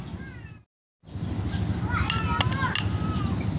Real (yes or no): yes